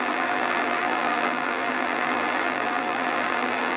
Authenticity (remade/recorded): remade